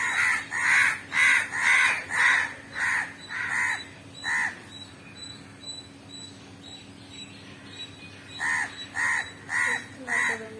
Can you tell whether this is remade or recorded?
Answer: recorded